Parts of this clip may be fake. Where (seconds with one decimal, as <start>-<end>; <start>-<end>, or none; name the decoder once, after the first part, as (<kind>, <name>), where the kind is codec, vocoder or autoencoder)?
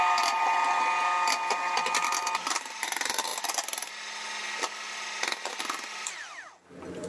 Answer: none